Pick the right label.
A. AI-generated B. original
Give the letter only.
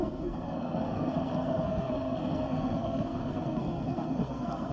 A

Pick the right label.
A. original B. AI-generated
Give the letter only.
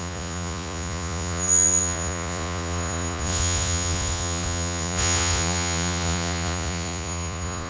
B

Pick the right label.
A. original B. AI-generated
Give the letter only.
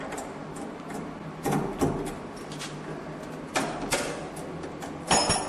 B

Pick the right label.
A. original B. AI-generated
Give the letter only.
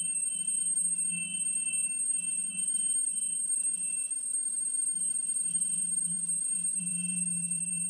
B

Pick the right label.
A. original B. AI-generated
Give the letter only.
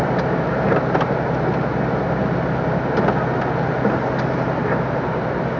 A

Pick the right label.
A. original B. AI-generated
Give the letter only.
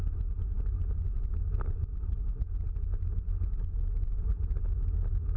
A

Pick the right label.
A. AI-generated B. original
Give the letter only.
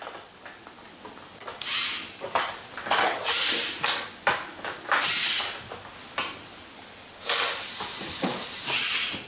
B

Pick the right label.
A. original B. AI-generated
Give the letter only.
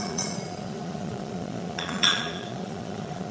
B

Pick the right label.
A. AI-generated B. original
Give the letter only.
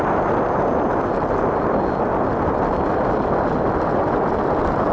B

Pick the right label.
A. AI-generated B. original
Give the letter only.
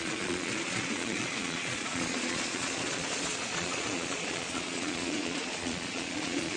A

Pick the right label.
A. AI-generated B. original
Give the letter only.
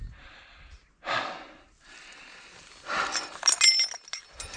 B